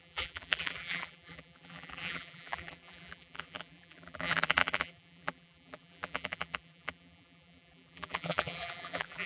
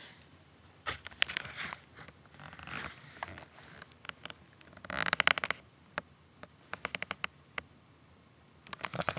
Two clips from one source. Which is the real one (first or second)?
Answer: second